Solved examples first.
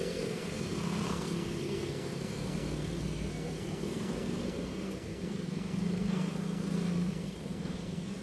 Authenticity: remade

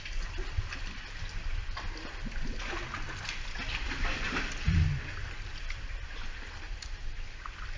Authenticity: recorded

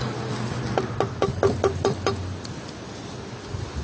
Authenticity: recorded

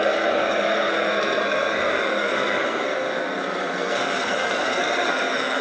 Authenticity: remade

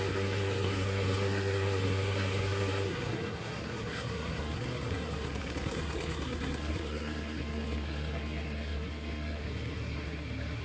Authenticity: remade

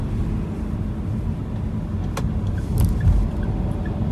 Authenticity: recorded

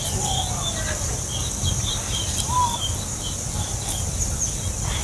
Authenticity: recorded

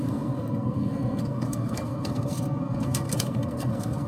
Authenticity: remade